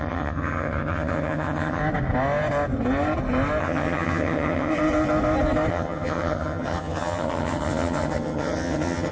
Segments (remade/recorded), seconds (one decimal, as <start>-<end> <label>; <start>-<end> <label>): 0.0-1.8 remade; 1.8-3.6 recorded; 3.6-4.7 remade; 4.7-5.7 recorded; 5.7-9.1 remade